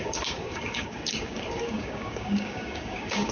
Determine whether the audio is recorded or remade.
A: remade